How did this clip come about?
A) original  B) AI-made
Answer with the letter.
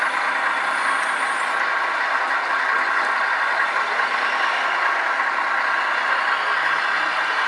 A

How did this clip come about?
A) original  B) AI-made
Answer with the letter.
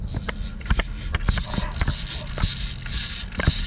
A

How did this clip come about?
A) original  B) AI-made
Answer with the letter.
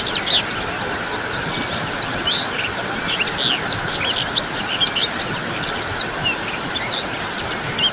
A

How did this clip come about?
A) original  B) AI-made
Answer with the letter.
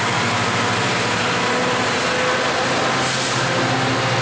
A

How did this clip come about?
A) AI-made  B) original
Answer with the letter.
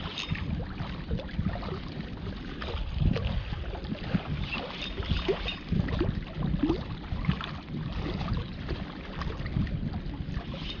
B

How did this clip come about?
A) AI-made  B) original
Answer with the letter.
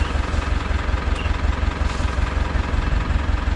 A